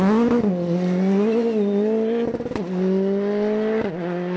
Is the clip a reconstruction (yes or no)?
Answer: no